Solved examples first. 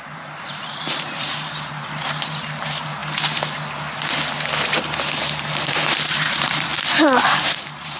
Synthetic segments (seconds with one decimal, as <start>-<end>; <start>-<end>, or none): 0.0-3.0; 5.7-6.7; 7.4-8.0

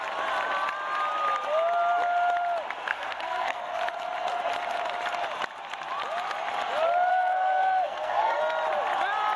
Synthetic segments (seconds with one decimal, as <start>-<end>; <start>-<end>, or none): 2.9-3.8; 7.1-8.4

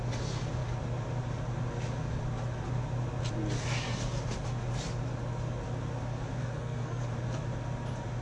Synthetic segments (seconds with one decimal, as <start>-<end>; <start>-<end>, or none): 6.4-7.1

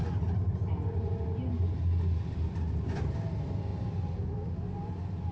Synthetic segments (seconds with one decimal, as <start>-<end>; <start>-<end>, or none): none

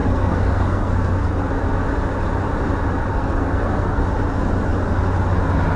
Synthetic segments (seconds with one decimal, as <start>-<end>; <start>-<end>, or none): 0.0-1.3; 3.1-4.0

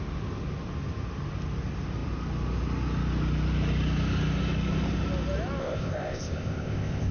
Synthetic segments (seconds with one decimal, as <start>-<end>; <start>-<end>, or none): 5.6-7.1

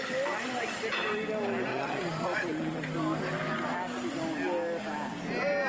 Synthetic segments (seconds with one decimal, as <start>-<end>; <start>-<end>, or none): 1.7-2.8

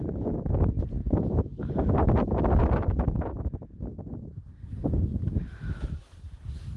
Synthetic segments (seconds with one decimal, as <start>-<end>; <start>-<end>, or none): 1.0-1.9; 2.6-4.5; 5.2-6.0